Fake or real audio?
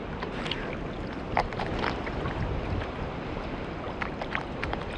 real